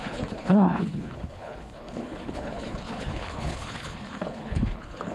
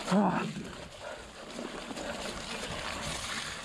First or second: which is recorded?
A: second